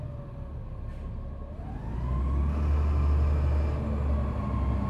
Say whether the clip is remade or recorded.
recorded